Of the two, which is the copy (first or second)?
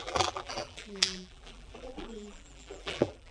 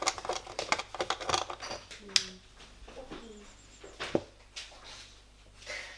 first